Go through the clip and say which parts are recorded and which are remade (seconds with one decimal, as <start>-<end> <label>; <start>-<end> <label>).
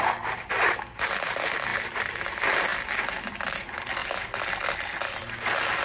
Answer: 0.0-5.8 recorded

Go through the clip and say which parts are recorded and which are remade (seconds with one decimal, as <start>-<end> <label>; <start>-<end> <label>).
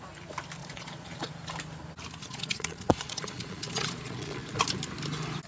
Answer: 0.0-0.6 recorded; 0.6-1.3 remade; 1.3-2.2 recorded; 2.2-4.6 remade; 4.6-5.5 recorded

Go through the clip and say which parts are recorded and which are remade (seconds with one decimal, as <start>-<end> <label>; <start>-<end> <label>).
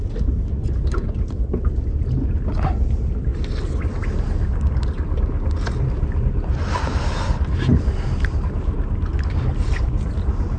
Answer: 0.0-10.6 recorded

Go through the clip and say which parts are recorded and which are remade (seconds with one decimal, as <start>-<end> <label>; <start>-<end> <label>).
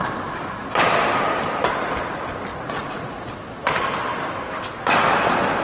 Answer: 0.0-2.5 recorded; 2.5-3.3 remade; 3.3-5.6 recorded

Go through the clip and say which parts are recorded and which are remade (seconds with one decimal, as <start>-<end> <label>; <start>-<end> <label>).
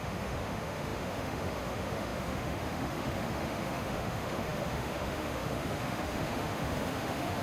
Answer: 0.0-7.4 remade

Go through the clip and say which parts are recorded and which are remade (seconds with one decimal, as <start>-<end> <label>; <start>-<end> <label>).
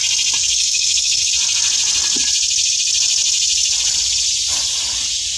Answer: 0.0-0.4 recorded; 0.4-1.3 remade; 1.3-5.4 recorded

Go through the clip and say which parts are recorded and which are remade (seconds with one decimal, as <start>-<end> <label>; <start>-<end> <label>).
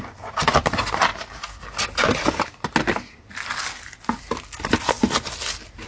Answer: 0.0-1.1 remade; 1.1-4.6 recorded; 4.6-5.9 remade